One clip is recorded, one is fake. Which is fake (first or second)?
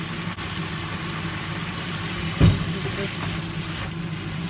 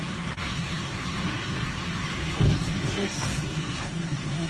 second